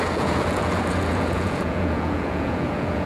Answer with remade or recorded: remade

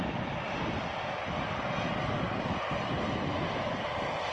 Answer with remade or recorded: recorded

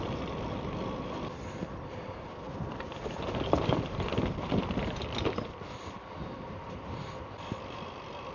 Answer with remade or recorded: recorded